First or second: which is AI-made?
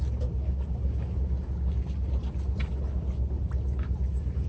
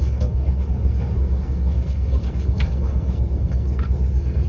second